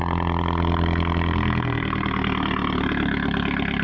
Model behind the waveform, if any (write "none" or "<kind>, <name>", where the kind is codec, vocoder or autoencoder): none